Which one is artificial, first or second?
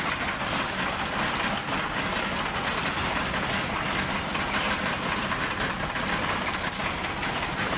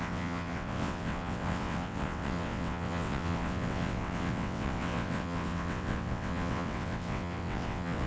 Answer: second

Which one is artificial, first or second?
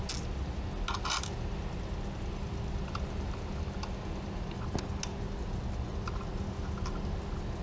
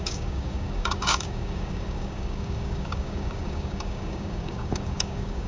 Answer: second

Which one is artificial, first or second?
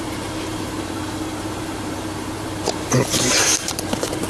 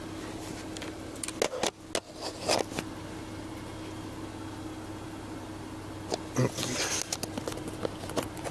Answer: first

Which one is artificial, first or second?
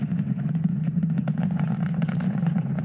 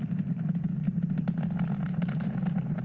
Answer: first